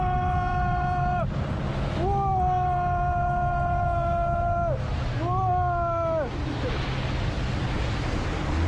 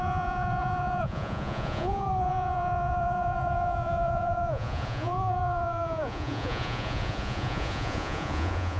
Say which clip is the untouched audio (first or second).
first